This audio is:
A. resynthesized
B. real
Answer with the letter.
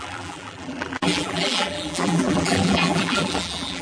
A